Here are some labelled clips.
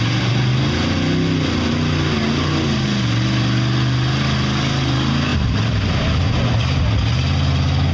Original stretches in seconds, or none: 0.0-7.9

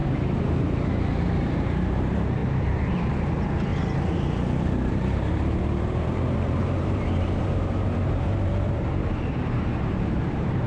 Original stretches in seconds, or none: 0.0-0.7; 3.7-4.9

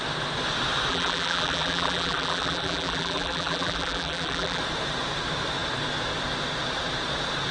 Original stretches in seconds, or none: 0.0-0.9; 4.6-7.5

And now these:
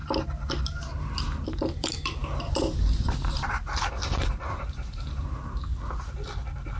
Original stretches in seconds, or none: 5.7-6.8

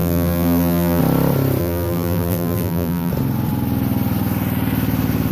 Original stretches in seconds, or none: 1.0-1.6; 3.1-5.3